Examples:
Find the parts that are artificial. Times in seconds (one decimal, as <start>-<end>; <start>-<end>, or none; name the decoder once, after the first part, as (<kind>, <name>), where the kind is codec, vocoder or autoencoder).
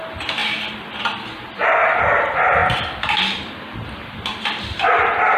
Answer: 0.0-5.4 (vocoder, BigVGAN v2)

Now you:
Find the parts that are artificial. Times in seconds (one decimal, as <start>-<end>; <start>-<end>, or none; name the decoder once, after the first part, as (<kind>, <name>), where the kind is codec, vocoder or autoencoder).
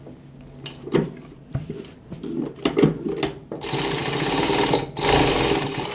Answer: 1.4-2.3 (vocoder, BigVGAN v2)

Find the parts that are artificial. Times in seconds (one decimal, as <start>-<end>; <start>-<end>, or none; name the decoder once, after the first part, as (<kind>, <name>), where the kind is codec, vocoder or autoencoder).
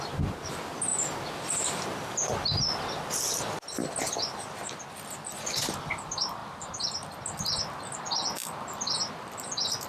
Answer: 6.4-7.1 (vocoder, BigVGAN v2); 8.3-9.9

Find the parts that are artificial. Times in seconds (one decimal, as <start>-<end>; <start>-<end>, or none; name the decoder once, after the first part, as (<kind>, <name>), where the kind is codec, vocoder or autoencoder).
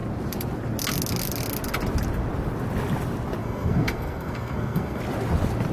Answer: 3.4-5.0 (codec, SNAC)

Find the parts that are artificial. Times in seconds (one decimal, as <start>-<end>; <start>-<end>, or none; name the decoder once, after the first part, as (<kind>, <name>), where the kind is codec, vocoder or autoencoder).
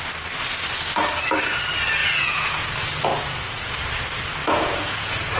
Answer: 2.0-2.7 (vocoder, Vocos); 3.1-3.7; 4.4-5.4